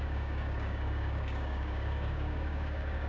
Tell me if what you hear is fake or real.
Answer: fake